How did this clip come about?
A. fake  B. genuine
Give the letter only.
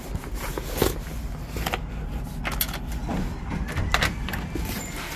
B